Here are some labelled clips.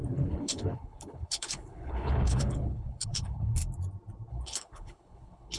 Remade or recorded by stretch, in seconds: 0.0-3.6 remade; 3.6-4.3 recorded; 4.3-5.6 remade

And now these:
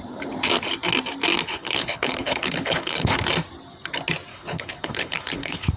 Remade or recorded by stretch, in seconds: 0.0-1.3 recorded; 1.3-3.2 remade; 3.2-4.3 recorded; 4.3-5.8 remade

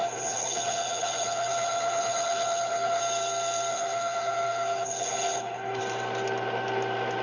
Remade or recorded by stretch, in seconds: 0.0-3.0 remade; 3.0-3.7 recorded; 3.7-5.8 remade; 5.8-7.2 recorded